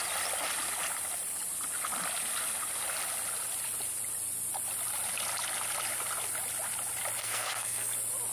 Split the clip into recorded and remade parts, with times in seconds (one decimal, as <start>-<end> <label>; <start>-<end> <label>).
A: 0.0-7.2 recorded; 7.2-7.9 remade; 7.9-8.3 recorded